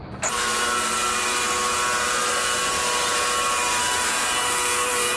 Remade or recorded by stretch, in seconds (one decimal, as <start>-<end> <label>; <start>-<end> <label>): 0.0-5.2 recorded